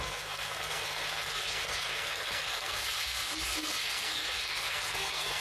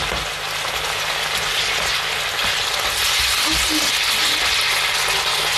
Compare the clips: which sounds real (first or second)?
second